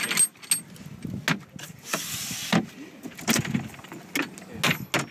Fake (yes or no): no